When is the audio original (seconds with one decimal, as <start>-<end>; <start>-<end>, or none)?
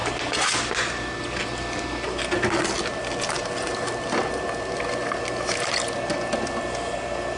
0.0-7.4